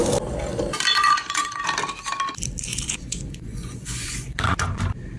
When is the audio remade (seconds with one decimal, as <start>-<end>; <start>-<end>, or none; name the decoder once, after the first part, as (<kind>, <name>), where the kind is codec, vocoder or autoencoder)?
0.9-1.6 (vocoder, Vocos); 2.7-4.8